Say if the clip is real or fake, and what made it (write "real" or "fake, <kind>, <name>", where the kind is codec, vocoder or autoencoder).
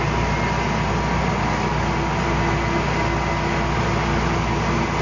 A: real